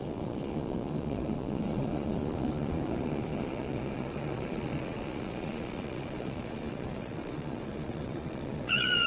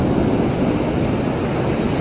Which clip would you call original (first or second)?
second